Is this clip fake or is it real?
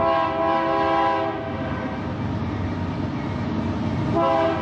real